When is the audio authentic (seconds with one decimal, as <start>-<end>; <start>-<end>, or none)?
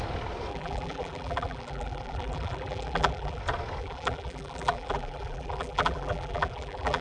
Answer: 0.0-0.5; 3.4-3.8